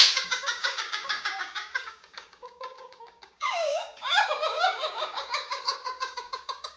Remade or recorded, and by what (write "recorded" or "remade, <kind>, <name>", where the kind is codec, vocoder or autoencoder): remade, codec, DAC